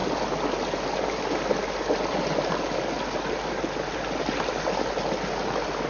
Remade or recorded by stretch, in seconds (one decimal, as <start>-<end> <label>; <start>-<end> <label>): 0.0-5.9 recorded

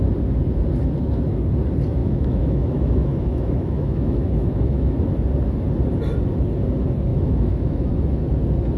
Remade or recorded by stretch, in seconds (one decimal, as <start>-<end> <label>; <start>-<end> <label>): 0.0-2.0 recorded; 2.0-5.0 remade; 5.0-7.1 recorded; 7.1-7.9 remade; 7.9-8.8 recorded

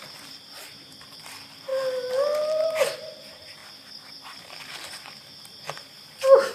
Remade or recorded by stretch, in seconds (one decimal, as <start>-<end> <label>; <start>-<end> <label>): 0.0-1.7 remade; 1.7-2.4 recorded; 2.4-3.6 remade; 3.6-4.4 recorded; 4.4-6.5 remade

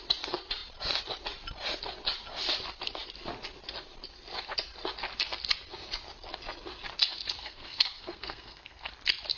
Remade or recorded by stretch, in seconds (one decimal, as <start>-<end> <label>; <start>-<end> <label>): 0.0-7.4 recorded; 7.4-8.9 remade; 8.9-9.4 recorded

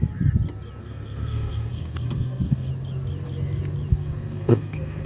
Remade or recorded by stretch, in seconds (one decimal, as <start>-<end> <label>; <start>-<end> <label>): 0.0-0.8 recorded; 0.8-2.7 remade; 2.7-3.9 recorded; 3.9-5.1 remade

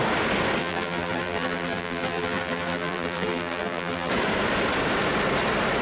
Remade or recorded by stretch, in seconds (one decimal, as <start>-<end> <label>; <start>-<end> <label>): 0.0-0.6 recorded; 0.6-4.1 remade; 4.1-5.8 recorded

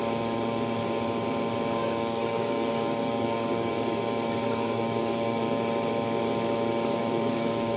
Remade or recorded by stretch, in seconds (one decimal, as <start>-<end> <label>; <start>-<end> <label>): 0.0-1.8 recorded; 1.8-3.7 remade; 3.7-4.4 recorded; 4.4-5.4 remade; 5.4-7.0 recorded; 7.0-7.8 remade

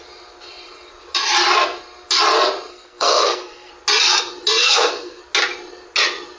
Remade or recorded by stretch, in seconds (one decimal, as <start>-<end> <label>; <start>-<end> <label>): 0.0-2.7 recorded; 2.7-3.7 remade; 3.7-4.6 recorded; 4.6-5.2 remade; 5.2-6.4 recorded